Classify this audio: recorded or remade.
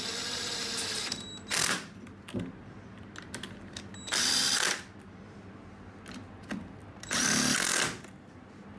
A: recorded